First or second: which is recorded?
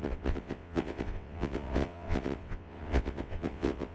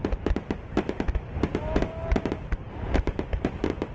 second